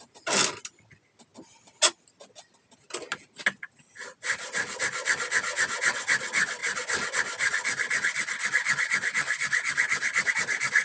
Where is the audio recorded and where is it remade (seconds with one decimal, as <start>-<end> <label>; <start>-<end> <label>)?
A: 0.0-10.8 recorded